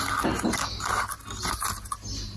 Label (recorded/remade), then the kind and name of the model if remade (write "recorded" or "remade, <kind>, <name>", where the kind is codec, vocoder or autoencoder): recorded